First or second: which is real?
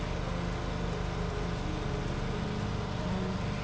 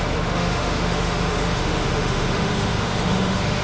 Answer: first